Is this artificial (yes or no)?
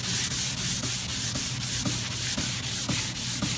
no